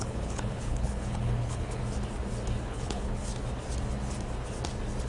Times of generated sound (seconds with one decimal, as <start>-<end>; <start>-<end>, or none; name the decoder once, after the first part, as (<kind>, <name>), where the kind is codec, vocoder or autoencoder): 0.0-1.8 (codec, HILCodec); 2.6-3.3

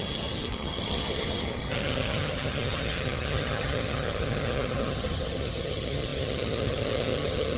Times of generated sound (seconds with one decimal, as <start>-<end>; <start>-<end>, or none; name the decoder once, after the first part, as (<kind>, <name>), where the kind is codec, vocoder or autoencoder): 0.0-7.6 (vocoder, HiFi-GAN)

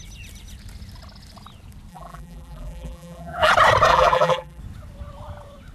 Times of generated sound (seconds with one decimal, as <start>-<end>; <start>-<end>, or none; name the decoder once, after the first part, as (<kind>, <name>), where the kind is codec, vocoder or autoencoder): 1.9-3.5 (vocoder, BigVGAN v2); 3.9-4.6

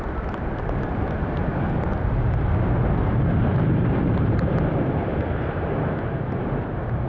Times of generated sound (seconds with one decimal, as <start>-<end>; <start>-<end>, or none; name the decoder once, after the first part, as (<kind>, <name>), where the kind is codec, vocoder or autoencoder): 3.0-5.9 (vocoder, BigVGAN v2)

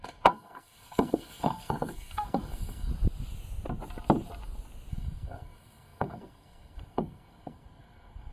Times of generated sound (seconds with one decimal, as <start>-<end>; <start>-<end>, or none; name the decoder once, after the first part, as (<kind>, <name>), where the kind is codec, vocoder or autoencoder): 0.0-2.9 (codec, SNAC); 4.9-8.3

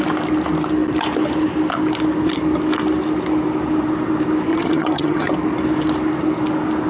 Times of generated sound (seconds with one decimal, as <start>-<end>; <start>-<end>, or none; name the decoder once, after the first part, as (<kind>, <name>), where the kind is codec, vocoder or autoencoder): 4.5-5.3 (vocoder, HiFi-GAN)